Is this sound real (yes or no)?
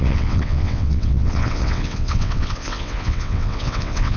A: no